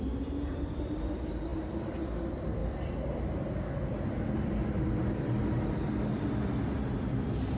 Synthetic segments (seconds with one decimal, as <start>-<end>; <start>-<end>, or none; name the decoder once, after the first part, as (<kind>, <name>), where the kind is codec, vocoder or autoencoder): 0.0-7.6 (vocoder, BigVGAN v2)